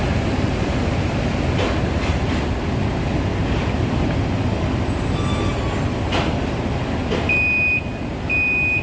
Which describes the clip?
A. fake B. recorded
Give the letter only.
B